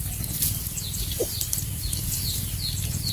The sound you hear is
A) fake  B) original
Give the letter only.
B